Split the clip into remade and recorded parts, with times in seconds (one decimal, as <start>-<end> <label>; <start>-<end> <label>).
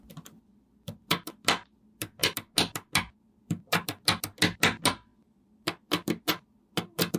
0.0-7.2 recorded